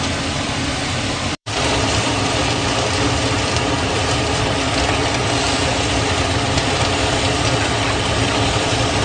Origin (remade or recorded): remade